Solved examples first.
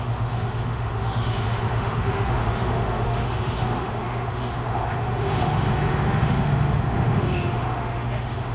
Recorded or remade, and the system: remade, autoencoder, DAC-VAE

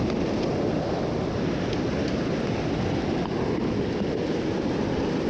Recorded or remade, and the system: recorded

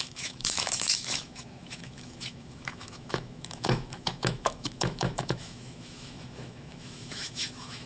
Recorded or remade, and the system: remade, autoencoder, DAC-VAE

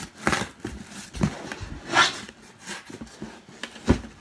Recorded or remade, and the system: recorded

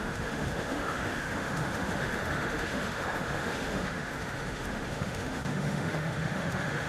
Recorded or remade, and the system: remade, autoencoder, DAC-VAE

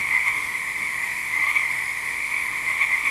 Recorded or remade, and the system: remade, autoencoder, DAC-VAE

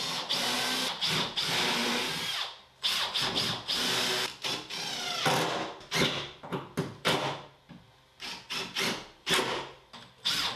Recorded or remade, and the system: recorded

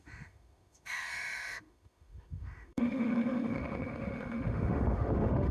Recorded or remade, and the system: remade, autoencoder, DAC-VAE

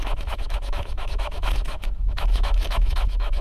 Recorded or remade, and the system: remade, autoencoder, DAC-VAE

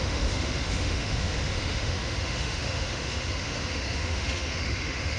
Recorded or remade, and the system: remade, autoencoder, DAC-VAE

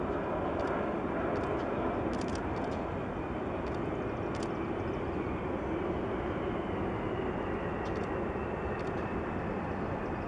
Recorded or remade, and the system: recorded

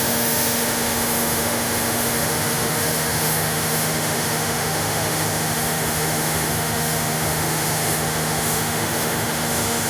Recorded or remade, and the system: remade, autoencoder, DAC-VAE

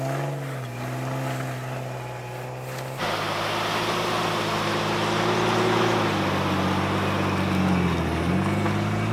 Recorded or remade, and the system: recorded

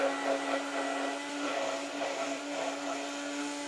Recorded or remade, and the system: recorded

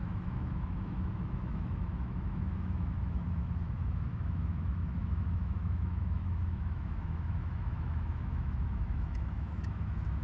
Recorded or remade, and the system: remade, autoencoder, DAC-VAE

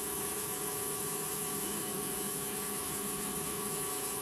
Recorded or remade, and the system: remade, autoencoder, DAC-VAE